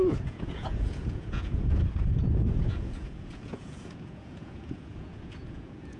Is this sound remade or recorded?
remade